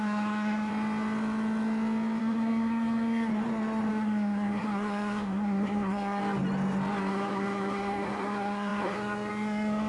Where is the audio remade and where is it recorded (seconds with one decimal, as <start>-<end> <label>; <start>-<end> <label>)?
0.0-0.7 remade; 0.7-2.2 recorded; 2.2-3.3 remade; 3.3-3.9 recorded; 3.9-6.2 remade; 6.2-7.1 recorded; 7.1-9.9 remade